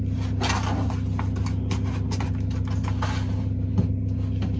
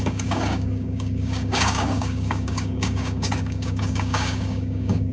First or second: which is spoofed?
second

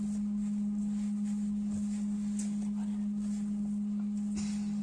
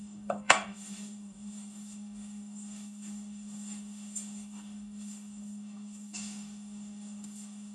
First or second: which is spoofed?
second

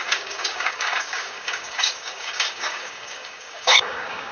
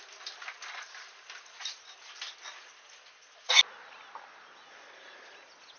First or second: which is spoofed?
first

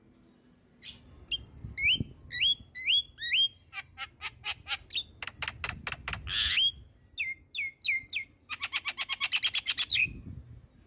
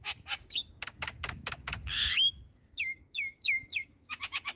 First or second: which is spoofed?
second